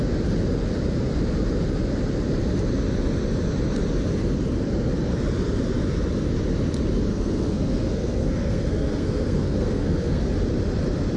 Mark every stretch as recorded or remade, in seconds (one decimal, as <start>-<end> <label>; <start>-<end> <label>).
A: 0.0-7.1 recorded; 7.1-10.3 remade; 10.3-11.2 recorded